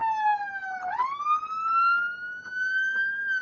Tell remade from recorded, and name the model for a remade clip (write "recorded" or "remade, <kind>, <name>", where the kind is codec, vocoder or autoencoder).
recorded